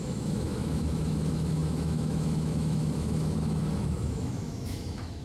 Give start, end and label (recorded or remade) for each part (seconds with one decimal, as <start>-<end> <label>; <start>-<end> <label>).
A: 0.0-5.2 remade